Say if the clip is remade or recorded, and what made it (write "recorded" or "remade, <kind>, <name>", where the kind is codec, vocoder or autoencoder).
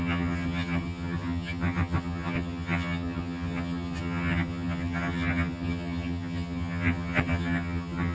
remade, vocoder, HiFi-GAN